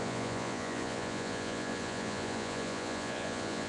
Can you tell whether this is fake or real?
fake